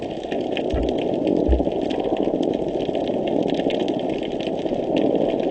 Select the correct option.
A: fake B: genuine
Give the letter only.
B